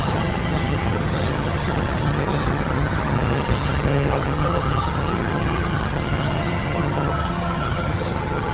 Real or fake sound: fake